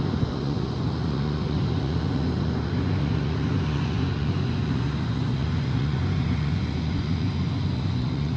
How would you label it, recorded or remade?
remade